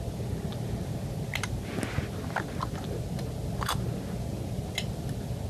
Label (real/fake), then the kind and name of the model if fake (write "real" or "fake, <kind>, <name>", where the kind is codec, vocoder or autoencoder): real